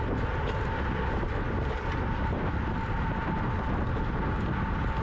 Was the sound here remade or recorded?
recorded